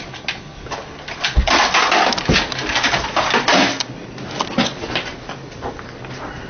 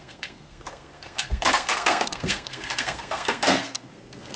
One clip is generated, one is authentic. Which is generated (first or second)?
second